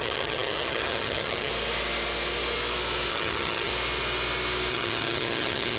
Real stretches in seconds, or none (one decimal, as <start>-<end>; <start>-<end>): 1.5-3.1; 3.7-4.7